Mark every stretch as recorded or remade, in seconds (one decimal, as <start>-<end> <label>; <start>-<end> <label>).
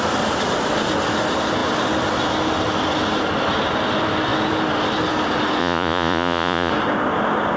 0.0-5.6 recorded; 5.6-6.7 remade; 6.7-7.6 recorded